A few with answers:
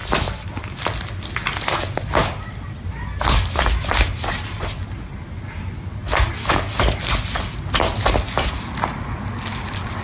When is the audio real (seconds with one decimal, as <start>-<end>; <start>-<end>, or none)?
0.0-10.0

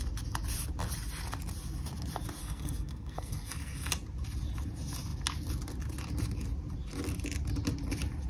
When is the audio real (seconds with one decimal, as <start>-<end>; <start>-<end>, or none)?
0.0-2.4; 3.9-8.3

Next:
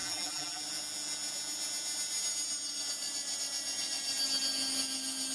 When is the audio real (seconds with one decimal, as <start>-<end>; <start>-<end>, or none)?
0.6-5.3